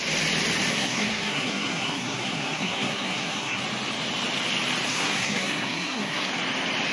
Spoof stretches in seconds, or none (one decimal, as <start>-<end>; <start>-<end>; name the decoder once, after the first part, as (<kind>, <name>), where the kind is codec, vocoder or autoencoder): 0.7-3.6 (codec, SNAC); 4.9-6.3